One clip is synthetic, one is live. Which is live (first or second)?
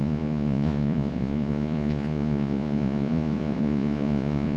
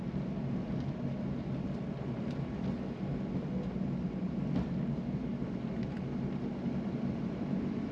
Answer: second